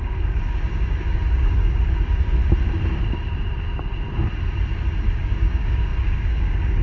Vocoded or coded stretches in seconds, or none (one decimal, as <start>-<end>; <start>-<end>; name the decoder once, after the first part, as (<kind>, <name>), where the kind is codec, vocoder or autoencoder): 0.0-2.4 (codec, DAC); 5.0-6.8